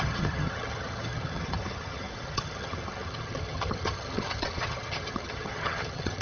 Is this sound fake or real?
fake